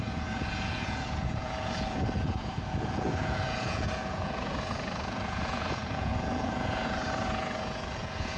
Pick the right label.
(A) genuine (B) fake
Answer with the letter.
B